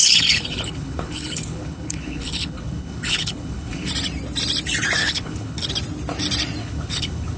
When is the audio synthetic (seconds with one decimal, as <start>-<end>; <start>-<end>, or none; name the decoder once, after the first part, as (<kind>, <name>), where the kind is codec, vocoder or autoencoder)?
0.0-3.9 (codec, HILCodec); 5.0-5.7; 6.6-7.4